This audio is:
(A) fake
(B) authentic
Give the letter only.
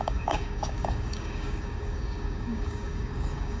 A